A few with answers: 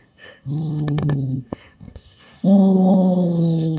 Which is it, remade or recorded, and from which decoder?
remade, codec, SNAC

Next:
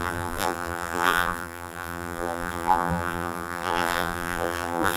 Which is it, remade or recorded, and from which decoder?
remade, vocoder, BigVGAN v2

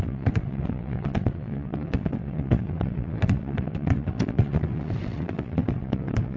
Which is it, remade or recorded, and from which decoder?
remade, vocoder, WaveNeXt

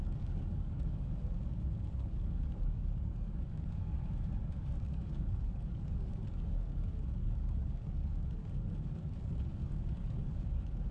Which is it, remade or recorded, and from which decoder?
remade, codec, DAC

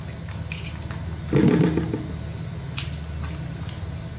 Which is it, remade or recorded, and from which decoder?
recorded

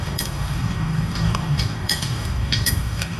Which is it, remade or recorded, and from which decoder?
remade, codec, DAC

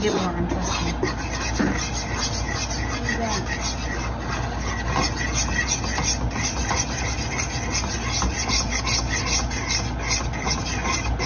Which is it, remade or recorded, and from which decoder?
recorded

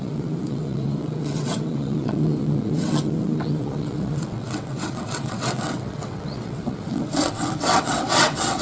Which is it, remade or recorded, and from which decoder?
remade, vocoder, WaveNeXt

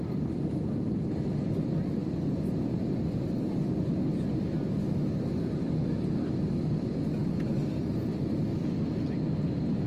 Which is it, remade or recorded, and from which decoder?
recorded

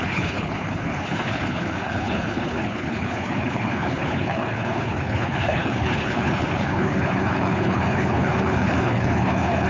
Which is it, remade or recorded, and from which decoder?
remade, codec, HILCodec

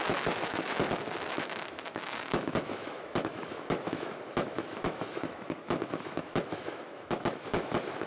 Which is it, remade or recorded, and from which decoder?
remade, autoencoder, DAC-VAE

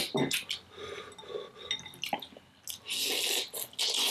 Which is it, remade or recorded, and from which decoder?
recorded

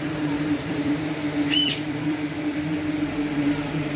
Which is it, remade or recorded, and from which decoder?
remade, vocoder, BigVGAN v2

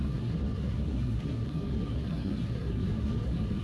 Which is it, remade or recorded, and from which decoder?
remade, codec, SNAC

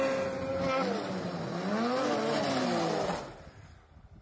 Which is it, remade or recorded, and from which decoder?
recorded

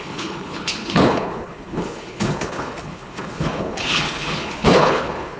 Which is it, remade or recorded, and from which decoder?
remade, codec, HILCodec